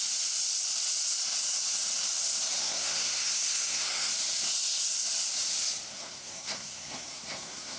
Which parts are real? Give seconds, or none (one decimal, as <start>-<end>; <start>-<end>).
0.0-2.6; 4.1-5.9